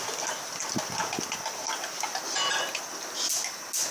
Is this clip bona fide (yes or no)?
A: yes